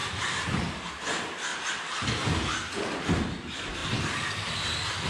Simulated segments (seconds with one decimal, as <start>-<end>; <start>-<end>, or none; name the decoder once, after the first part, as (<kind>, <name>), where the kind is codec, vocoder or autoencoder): 0.0-0.9 (vocoder, BigVGAN v2); 1.5-2.1